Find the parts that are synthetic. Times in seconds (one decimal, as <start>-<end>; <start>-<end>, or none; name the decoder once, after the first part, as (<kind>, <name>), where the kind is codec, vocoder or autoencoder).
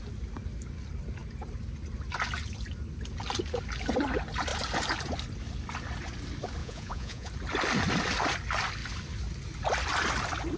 6.6-7.3 (vocoder, Vocos)